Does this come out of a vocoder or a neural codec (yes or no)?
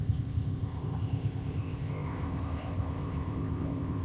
yes